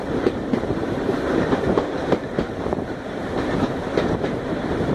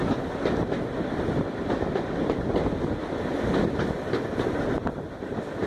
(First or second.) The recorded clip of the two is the second